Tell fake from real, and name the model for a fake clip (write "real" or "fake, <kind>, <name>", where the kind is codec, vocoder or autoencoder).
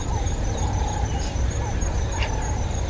fake, vocoder, BigVGAN v2